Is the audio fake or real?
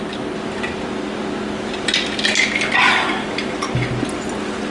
real